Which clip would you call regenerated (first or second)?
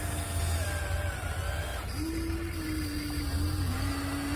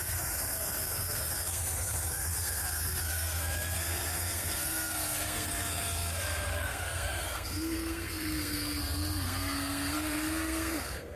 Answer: second